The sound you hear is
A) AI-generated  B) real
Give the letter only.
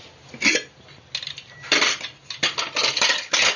B